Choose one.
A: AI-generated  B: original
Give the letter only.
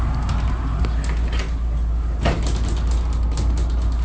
B